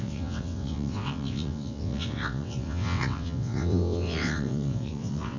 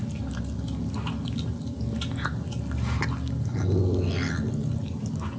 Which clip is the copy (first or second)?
first